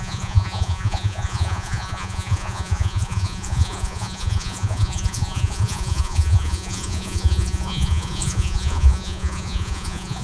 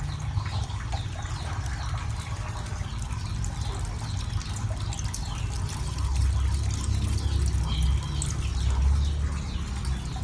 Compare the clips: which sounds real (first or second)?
second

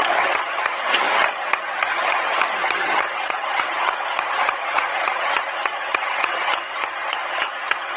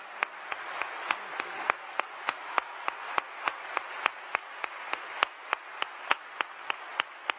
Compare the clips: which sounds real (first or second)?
second